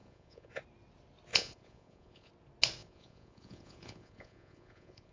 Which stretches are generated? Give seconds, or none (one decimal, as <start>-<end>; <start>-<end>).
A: 0.0-0.6; 1.3-2.3; 2.8-5.1